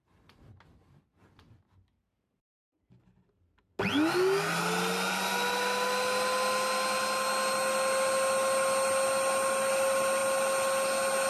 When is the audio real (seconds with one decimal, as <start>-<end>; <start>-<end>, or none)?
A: 0.0-11.3